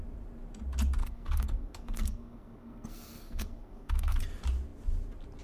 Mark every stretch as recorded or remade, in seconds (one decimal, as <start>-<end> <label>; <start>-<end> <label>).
0.0-1.0 recorded; 1.0-4.2 remade; 4.2-5.4 recorded